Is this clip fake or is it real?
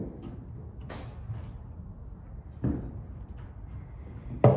real